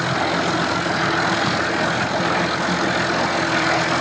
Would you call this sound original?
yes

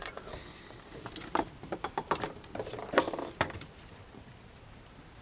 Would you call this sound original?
yes